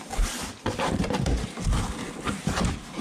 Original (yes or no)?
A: yes